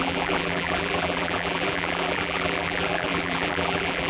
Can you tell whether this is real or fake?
fake